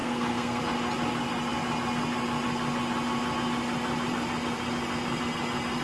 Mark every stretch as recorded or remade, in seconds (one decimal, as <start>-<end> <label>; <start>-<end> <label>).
0.0-0.6 remade; 0.6-5.8 recorded